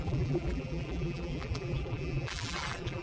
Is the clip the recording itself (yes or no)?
no